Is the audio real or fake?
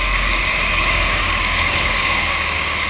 fake